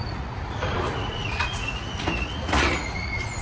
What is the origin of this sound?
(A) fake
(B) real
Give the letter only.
A